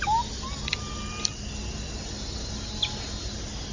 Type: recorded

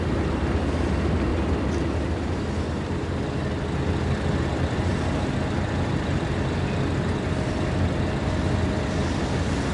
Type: recorded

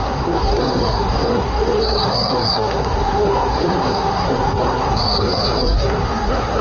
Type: remade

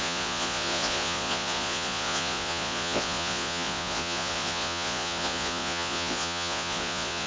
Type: remade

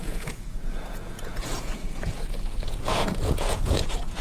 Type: remade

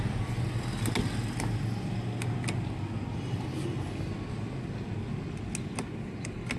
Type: recorded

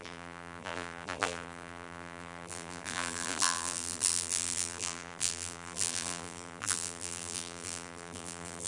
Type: remade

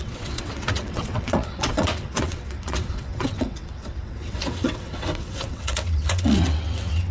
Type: remade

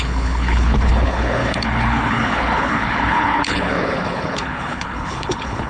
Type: remade